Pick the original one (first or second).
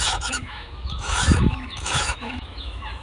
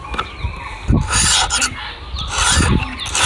second